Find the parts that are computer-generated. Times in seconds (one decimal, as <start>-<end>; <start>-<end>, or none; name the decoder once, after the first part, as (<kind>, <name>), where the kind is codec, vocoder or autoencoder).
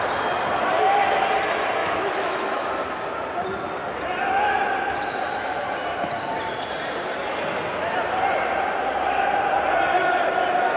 1.8-2.7 (autoencoder, DAC-VAE)